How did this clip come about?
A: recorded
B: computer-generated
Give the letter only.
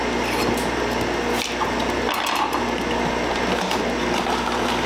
A